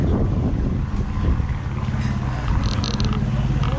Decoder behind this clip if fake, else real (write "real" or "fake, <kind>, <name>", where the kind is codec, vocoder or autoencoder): real